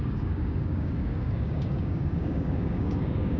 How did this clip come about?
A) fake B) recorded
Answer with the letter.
A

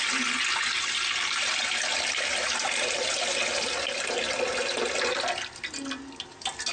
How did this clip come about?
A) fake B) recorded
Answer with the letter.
B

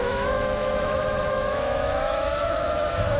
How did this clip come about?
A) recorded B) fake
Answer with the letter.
B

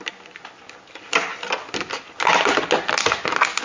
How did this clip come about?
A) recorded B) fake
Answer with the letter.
A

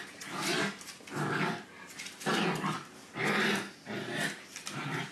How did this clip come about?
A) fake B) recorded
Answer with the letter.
B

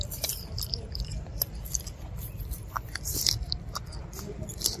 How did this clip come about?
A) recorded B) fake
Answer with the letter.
B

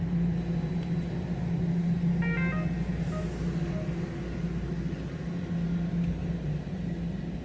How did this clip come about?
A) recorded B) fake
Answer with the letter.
A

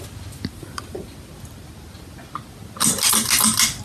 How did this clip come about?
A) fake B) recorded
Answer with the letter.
B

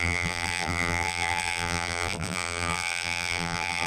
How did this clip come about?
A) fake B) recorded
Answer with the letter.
A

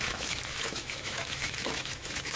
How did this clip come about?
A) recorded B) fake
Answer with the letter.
B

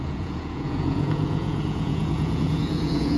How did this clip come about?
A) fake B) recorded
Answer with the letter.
A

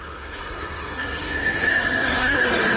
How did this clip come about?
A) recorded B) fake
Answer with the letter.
B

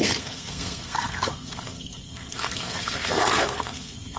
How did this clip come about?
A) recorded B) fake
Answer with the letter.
B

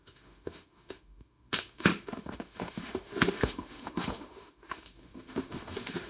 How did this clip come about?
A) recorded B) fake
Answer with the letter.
B